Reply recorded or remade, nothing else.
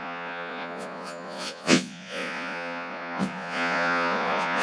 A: remade